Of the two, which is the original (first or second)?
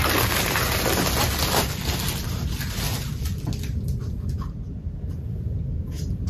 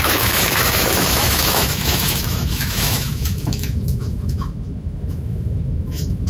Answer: first